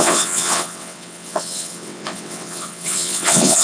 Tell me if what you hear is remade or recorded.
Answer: remade